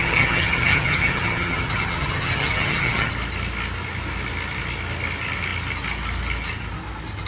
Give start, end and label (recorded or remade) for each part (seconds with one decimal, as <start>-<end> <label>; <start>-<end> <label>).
0.0-3.1 remade; 3.1-7.3 recorded